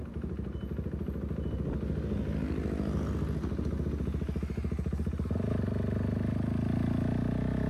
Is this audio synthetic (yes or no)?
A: no